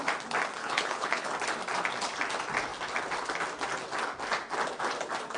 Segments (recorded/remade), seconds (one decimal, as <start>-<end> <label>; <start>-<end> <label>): 0.0-0.6 recorded; 0.6-1.3 remade; 1.3-5.4 recorded